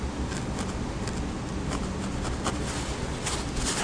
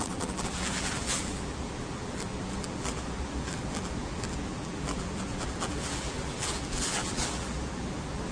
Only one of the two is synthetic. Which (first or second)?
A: second